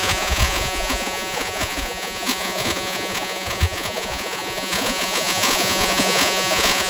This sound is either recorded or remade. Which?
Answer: remade